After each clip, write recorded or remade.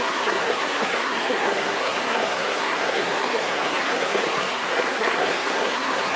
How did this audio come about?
remade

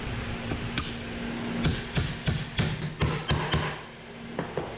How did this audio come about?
recorded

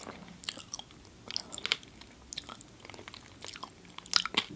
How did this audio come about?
recorded